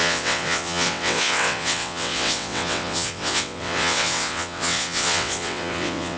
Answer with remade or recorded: remade